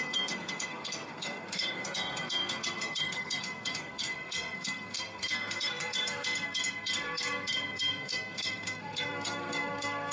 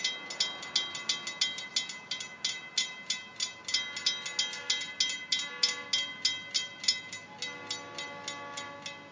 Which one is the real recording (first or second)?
second